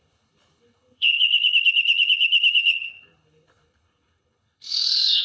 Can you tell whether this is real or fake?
fake